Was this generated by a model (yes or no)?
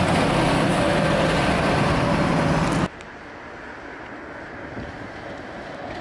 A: no